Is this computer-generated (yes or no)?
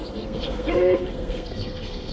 yes